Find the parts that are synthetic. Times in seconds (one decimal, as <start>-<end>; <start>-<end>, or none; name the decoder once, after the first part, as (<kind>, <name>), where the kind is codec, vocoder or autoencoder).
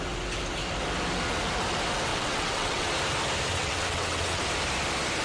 2.1-2.9 (vocoder, WaveNeXt); 3.5-4.4